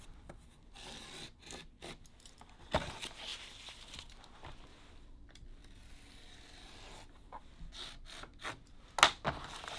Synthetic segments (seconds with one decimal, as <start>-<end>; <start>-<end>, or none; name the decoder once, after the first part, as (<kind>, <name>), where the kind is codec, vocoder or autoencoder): none